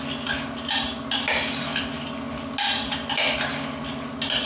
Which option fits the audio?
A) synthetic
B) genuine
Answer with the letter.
B